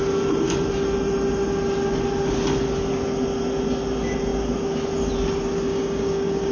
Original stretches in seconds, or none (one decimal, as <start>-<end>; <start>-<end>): 0.0-5.7